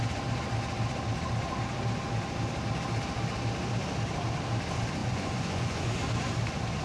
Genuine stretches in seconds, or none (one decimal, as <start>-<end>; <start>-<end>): 0.0-5.0; 5.9-6.8